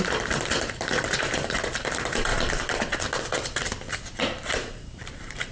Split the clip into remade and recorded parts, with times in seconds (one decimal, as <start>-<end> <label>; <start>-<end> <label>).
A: 0.0-2.3 remade; 2.3-4.5 recorded; 4.5-5.5 remade